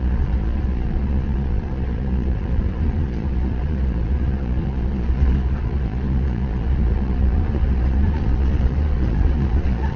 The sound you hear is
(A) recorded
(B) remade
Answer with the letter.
B